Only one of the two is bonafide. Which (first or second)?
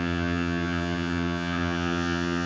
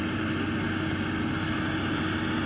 second